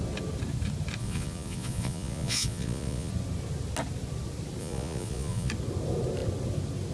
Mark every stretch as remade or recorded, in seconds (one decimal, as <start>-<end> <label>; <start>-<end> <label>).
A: 0.0-1.0 recorded; 1.0-3.1 remade; 3.1-4.6 recorded; 4.6-5.5 remade; 5.5-6.9 recorded